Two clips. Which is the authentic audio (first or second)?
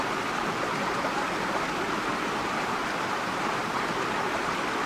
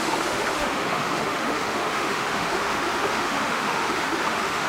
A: first